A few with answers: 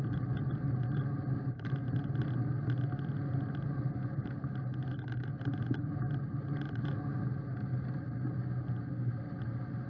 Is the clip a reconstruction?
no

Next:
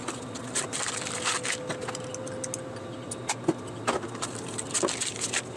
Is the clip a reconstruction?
no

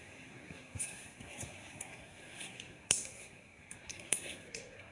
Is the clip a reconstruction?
yes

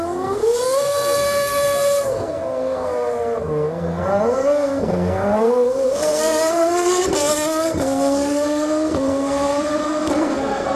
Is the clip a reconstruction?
yes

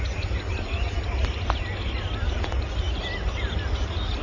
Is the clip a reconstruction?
no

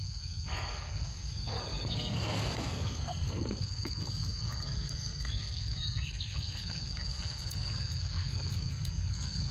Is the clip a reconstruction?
yes